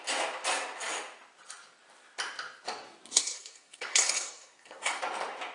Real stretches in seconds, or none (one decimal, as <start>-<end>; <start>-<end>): 0.0-3.1; 5.0-5.5